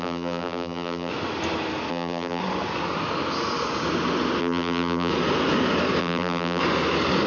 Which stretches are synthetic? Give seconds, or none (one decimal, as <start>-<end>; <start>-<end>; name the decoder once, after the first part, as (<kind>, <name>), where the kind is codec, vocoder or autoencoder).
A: 0.0-1.1 (vocoder, BigVGAN v2); 1.9-2.4; 4.4-5.1; 6.0-6.6